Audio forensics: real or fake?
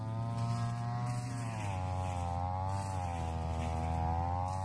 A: real